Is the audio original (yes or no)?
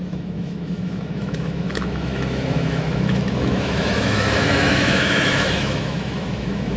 no